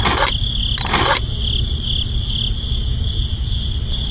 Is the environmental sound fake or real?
real